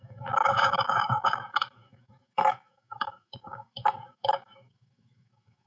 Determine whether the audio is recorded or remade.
remade